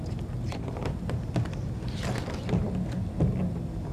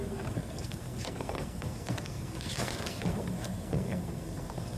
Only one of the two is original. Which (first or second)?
first